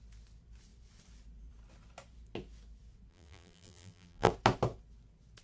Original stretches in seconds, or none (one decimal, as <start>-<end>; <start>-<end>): 0.0-3.1; 4.3-5.4